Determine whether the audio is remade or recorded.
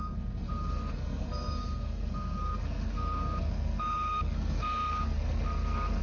remade